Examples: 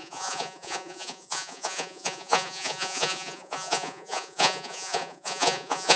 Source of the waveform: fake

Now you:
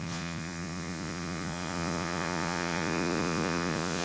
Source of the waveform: fake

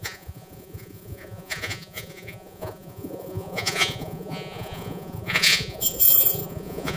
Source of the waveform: fake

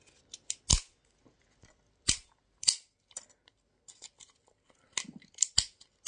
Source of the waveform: real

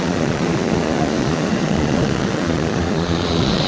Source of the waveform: fake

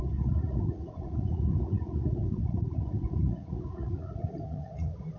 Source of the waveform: fake